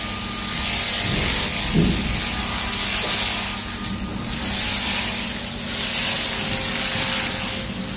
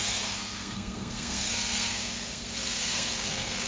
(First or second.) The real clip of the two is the first